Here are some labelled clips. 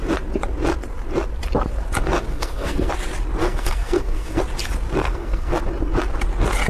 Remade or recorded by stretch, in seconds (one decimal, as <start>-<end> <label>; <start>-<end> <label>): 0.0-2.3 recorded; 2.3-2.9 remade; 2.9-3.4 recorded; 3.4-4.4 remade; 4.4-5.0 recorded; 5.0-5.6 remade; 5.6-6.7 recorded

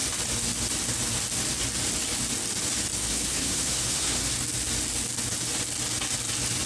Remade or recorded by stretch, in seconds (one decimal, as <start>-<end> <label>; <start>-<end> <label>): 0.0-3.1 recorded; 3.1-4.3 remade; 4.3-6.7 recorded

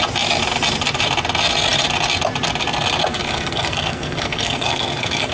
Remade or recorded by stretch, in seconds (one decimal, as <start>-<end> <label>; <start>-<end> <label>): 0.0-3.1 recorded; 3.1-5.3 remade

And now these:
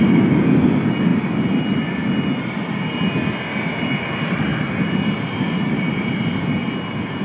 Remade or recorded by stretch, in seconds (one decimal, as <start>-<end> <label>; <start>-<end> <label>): 0.0-7.2 recorded

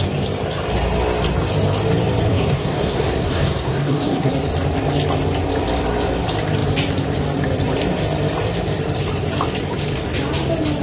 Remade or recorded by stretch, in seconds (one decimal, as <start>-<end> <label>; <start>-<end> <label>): 0.0-2.3 recorded; 2.3-4.3 remade; 4.3-10.8 recorded

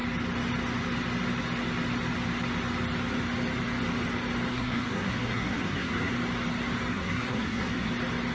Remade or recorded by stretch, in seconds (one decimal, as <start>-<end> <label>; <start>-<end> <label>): 0.0-4.5 recorded; 4.5-6.1 remade; 6.1-6.9 recorded; 6.9-7.9 remade; 7.9-8.3 recorded